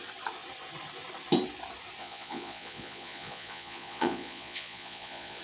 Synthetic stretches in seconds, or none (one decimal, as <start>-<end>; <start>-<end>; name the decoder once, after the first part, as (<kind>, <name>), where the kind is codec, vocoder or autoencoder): 2.0-5.4 (vocoder, Vocos)